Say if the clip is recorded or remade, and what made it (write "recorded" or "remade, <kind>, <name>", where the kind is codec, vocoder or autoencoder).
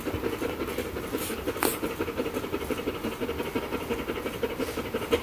recorded